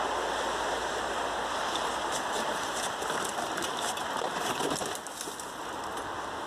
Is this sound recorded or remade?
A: recorded